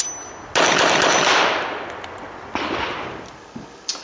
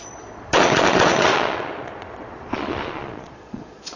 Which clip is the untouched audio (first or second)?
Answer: first